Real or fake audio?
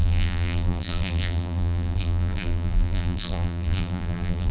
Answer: fake